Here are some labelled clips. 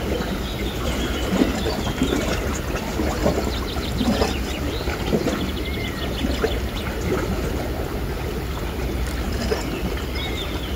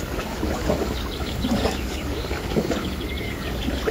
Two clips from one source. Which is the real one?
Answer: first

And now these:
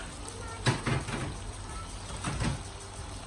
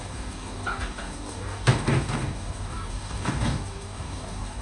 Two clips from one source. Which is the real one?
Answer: first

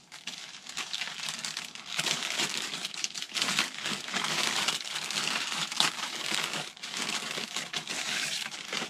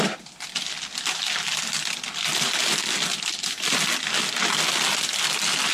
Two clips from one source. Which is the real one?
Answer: second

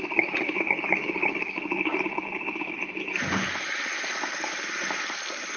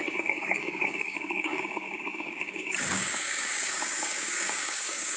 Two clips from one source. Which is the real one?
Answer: first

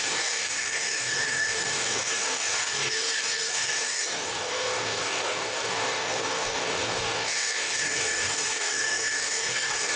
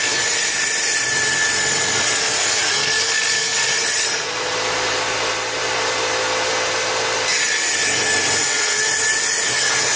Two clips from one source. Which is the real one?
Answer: second